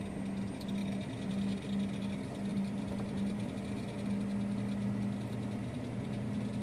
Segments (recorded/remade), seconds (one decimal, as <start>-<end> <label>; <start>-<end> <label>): 0.0-2.5 recorded; 2.5-3.5 remade; 3.5-5.6 recorded; 5.6-6.6 remade